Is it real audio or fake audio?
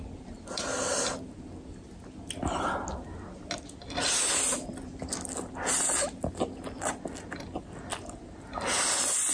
real